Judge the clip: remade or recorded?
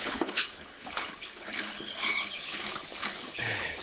remade